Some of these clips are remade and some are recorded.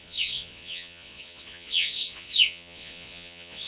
remade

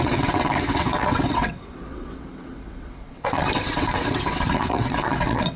remade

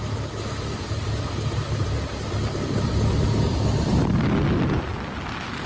recorded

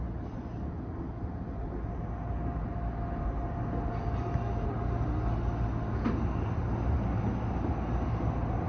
recorded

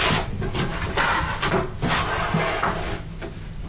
recorded